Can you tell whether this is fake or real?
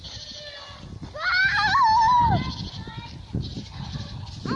real